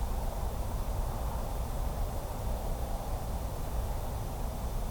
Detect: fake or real real